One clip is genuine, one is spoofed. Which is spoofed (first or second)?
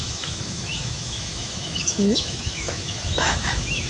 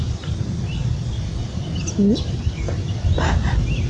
first